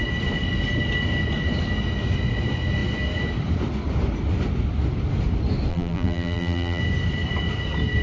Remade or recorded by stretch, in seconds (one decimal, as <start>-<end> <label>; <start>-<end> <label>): 0.0-5.7 recorded; 5.7-6.8 remade; 6.8-8.0 recorded